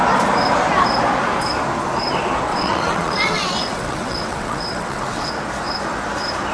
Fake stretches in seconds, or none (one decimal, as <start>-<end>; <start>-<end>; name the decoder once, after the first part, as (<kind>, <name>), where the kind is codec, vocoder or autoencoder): 2.5-5.3 (vocoder, WaveNeXt)